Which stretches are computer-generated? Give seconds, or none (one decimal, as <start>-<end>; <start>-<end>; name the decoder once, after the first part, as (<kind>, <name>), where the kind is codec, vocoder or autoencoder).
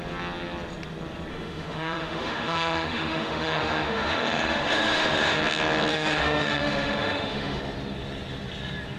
1.3-5.4 (autoencoder, DAC-VAE); 5.9-7.6